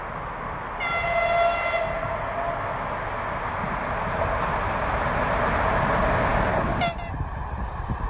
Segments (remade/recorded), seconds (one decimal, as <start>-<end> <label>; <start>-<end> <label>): 0.0-8.1 recorded